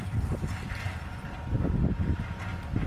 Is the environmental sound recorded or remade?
recorded